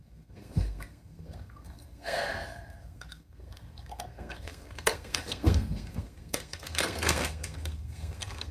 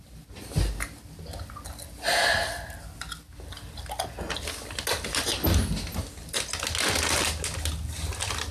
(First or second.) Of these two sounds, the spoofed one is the first